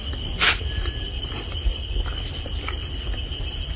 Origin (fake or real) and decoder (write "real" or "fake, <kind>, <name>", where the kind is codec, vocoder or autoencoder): real